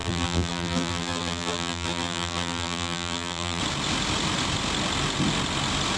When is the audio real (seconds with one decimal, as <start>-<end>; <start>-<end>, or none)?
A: 3.6-6.0